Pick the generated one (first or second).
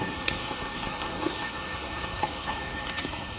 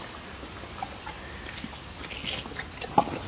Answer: first